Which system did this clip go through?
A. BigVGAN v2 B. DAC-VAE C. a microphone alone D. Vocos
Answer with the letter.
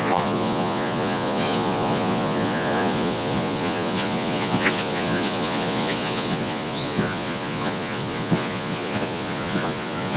D